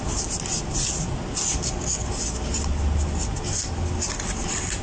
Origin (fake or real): real